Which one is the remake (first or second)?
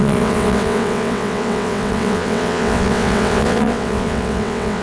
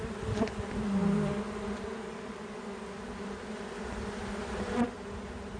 first